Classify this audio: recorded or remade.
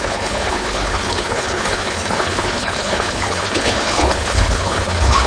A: remade